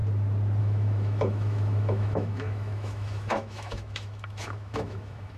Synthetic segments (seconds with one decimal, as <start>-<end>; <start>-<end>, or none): 0.6-5.4